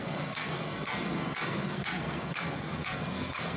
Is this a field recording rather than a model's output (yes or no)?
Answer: no